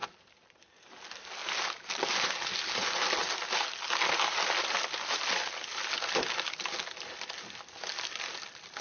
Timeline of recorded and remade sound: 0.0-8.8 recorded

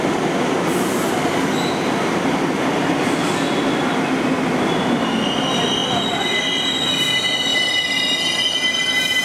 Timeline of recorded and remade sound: 0.0-5.8 recorded; 5.8-6.9 remade; 6.9-7.5 recorded; 7.5-9.2 remade

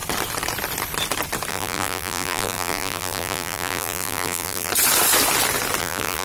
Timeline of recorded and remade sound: 0.0-1.5 recorded; 1.5-4.7 remade; 4.7-5.8 recorded; 5.8-6.2 remade

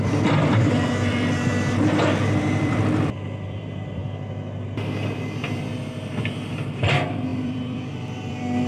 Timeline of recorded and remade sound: 0.0-1.5 remade; 1.5-2.0 recorded; 2.0-4.0 remade; 4.0-6.5 recorded; 6.5-8.7 remade

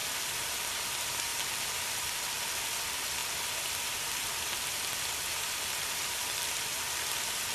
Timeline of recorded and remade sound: 0.0-3.2 recorded; 3.2-6.4 remade; 6.4-7.5 recorded

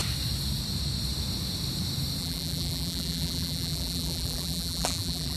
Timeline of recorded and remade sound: 0.0-2.2 recorded; 2.2-5.4 remade